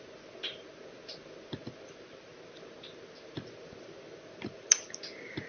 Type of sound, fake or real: real